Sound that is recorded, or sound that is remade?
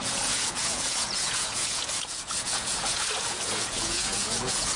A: remade